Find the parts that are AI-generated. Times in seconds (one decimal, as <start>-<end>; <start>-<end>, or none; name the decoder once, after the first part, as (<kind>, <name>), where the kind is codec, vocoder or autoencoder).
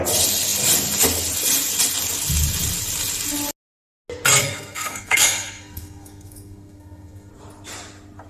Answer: 4.4-7.3 (codec, SNAC)